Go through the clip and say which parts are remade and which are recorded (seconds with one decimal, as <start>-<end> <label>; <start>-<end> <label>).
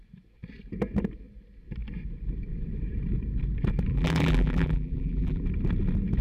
0.0-3.9 recorded; 3.9-5.4 remade; 5.4-6.2 recorded